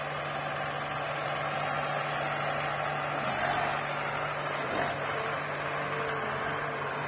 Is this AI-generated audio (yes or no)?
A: no